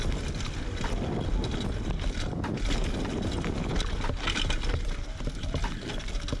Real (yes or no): yes